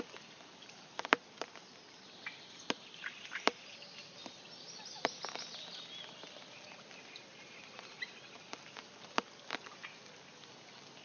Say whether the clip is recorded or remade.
recorded